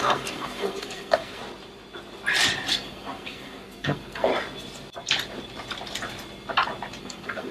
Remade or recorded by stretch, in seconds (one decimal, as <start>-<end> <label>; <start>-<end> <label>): 0.0-1.4 remade; 1.4-2.7 recorded; 2.7-4.3 remade; 4.3-7.0 recorded; 7.0-7.5 remade